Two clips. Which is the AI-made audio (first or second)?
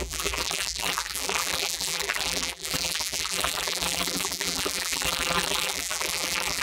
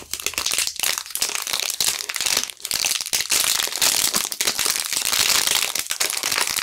first